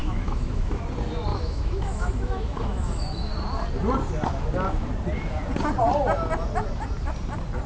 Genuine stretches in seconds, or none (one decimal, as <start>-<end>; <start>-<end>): 0.8-1.3; 3.3-7.7